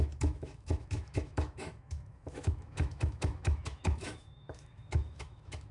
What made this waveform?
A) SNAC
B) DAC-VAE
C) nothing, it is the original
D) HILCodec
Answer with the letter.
B